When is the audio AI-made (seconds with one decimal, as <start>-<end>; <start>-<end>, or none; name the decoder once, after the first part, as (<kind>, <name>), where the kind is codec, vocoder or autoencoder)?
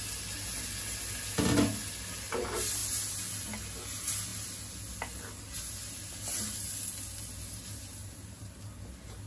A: 8.0-8.6 (vocoder, BigVGAN v2)